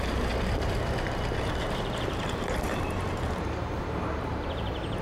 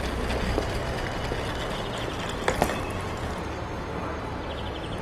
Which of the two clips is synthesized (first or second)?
first